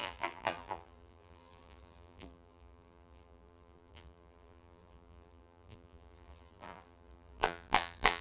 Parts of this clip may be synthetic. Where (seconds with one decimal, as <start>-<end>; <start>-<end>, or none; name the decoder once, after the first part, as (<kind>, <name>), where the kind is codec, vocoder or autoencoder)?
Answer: 0.0-8.2 (vocoder, BigVGAN v2)